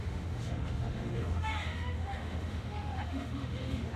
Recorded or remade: remade